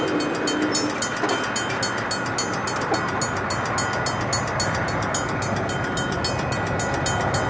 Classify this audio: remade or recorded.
recorded